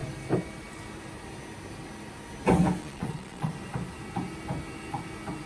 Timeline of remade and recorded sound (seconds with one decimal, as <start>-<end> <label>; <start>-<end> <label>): 0.0-2.8 recorded; 2.8-3.5 remade; 3.5-5.5 recorded